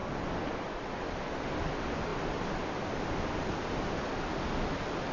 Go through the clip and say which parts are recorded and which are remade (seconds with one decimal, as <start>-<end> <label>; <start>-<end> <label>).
0.0-5.1 recorded